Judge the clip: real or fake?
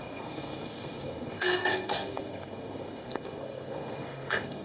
fake